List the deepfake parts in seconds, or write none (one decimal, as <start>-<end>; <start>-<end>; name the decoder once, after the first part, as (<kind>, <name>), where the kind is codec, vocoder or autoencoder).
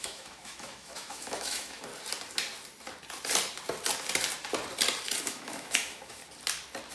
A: 0.0-1.9 (autoencoder, DAC-VAE); 5.2-6.2